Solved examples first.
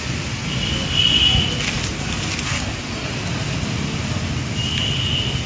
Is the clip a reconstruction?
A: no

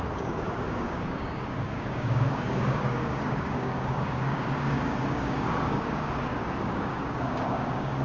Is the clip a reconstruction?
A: yes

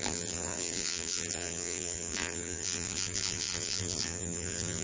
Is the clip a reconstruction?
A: yes